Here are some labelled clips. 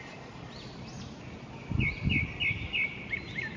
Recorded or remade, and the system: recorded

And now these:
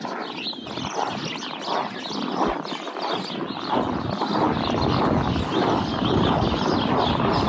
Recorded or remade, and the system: recorded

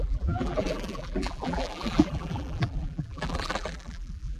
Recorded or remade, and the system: remade, vocoder, BigVGAN v2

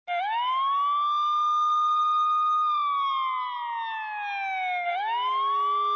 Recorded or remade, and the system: recorded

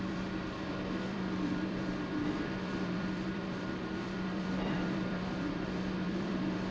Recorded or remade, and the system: remade, vocoder, BigVGAN v2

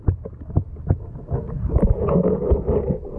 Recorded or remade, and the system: recorded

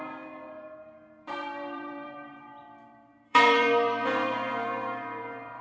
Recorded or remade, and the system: remade, vocoder, BigVGAN v2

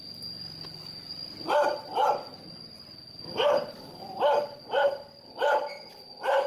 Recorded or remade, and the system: recorded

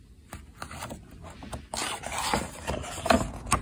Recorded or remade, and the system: recorded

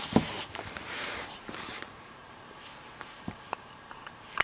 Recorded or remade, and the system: remade, vocoder, BigVGAN v2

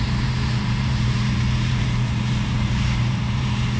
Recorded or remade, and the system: remade, vocoder, BigVGAN v2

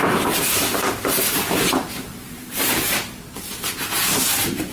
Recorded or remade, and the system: remade, vocoder, BigVGAN v2